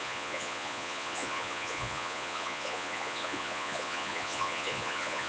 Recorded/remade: remade